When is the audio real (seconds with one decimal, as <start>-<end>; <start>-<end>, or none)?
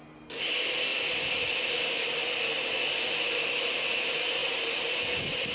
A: 0.0-5.5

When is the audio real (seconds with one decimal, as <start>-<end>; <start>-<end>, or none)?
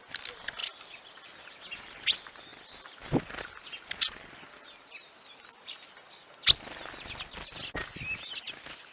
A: 0.0-8.9